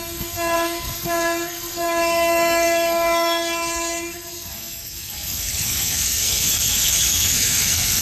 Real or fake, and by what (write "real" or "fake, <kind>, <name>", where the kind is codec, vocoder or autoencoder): fake, codec, SNAC